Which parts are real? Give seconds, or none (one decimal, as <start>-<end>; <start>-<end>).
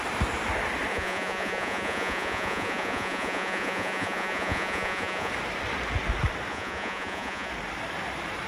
0.0-0.9; 5.3-6.5; 7.5-8.5